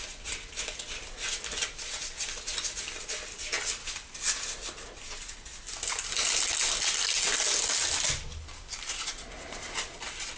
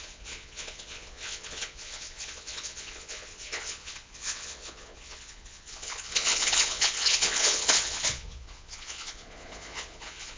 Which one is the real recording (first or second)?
first